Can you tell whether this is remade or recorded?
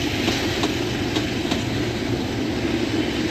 recorded